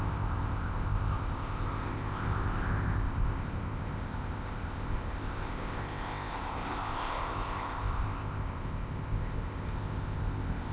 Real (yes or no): no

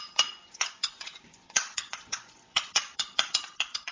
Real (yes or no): no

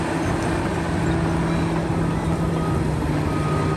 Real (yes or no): yes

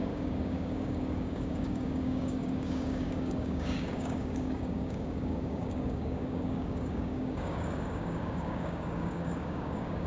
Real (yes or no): no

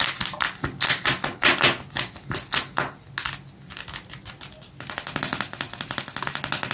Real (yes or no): yes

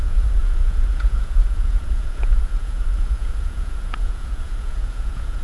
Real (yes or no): no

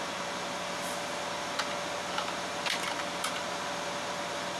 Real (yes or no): yes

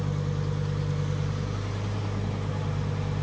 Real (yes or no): yes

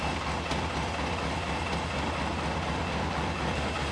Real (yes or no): yes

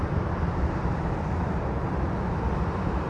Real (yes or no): yes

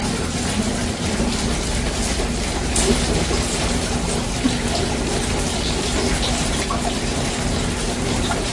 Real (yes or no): yes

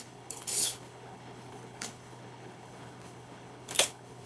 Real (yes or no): no